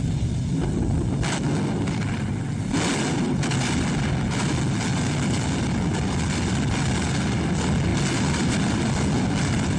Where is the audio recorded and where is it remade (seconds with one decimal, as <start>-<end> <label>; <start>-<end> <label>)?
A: 0.0-9.8 recorded